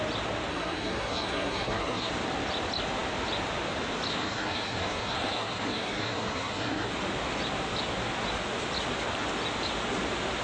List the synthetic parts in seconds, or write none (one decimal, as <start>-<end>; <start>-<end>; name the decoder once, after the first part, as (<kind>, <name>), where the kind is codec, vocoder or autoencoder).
0.5-2.1 (codec, SNAC); 4.1-6.9